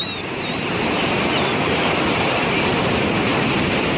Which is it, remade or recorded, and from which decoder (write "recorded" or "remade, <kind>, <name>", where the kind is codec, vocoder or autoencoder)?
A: recorded